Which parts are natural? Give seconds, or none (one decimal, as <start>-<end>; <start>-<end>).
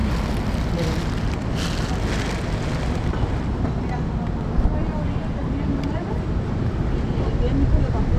0.0-5.4; 6.8-8.2